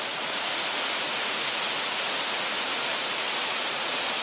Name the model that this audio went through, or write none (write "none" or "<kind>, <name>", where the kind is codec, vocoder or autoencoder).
vocoder, Vocos